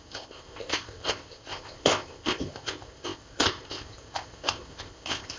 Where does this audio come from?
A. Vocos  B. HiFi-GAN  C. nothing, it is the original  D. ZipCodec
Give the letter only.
D